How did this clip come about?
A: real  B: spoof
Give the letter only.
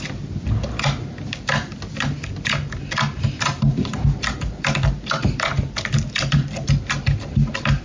A